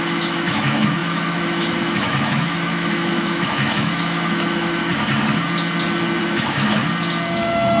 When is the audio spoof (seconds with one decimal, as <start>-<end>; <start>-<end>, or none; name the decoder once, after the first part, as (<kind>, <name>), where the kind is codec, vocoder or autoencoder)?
0.0-4.8 (autoencoder, DAC-VAE); 6.2-6.8